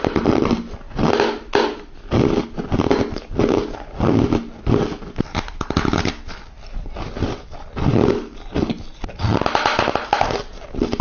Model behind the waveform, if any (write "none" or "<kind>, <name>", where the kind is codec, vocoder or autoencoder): none